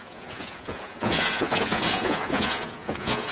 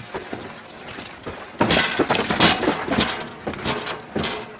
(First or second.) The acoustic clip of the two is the second